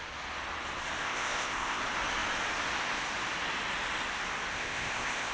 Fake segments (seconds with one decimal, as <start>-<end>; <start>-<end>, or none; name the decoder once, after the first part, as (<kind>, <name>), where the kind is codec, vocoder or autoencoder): 1.0-1.8 (codec, ZipCodec); 4.5-5.3

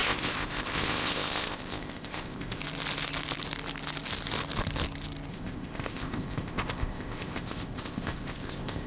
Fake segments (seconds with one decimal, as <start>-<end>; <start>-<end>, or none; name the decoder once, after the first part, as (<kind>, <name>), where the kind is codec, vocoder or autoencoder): 0.0-2.6 (codec, ZipCodec); 5.3-8.9